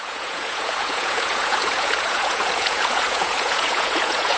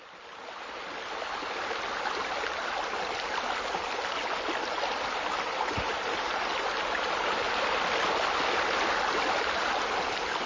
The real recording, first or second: second